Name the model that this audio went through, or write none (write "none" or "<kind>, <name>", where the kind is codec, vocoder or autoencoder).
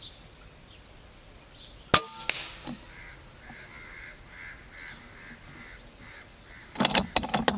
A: none